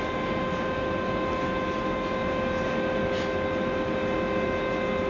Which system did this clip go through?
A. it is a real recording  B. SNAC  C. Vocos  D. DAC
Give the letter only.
A